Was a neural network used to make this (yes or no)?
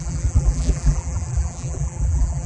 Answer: yes